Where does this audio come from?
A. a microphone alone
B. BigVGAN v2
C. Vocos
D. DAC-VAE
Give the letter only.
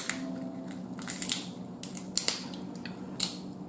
A